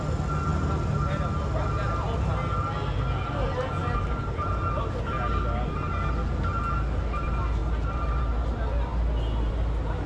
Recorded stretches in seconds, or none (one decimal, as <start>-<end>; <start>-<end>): 0.0-3.8; 4.5-10.1